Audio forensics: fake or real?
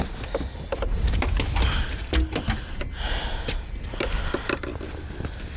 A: real